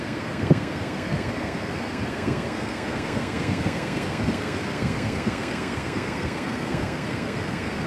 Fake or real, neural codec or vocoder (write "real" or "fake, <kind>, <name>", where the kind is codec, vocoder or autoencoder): fake, codec, SNAC